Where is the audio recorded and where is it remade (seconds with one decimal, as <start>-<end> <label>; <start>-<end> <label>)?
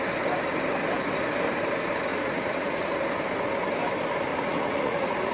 0.0-2.1 recorded; 2.1-2.9 remade; 2.9-4.3 recorded; 4.3-5.3 remade